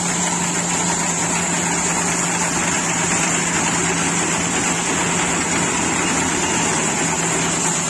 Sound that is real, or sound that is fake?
real